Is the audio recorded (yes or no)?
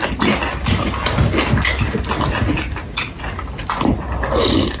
yes